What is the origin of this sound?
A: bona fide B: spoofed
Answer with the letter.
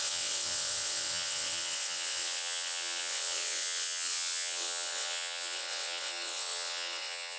B